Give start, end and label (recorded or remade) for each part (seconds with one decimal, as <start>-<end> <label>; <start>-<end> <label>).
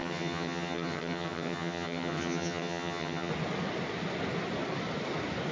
0.0-3.3 remade; 3.3-5.5 recorded